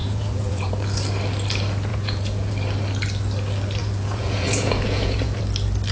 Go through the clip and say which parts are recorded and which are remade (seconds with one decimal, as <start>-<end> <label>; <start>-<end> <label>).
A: 0.0-0.7 remade; 0.7-1.9 recorded; 1.9-2.5 remade; 2.5-3.8 recorded; 3.8-5.4 remade; 5.4-5.9 recorded